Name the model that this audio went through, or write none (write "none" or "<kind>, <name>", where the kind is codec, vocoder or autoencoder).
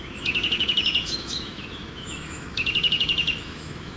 autoencoder, DAC-VAE